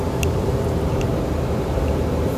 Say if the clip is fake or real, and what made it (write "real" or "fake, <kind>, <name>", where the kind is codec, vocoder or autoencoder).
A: real